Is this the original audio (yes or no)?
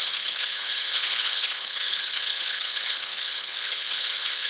no